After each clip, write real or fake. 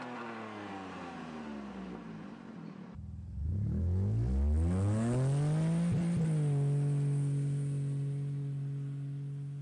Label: real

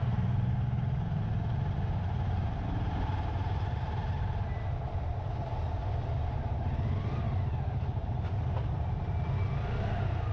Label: real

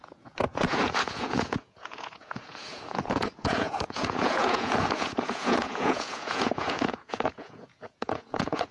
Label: fake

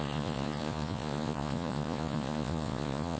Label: fake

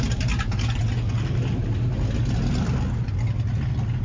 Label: real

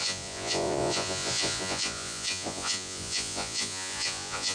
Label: fake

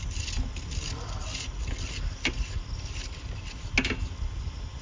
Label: real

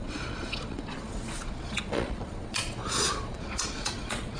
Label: fake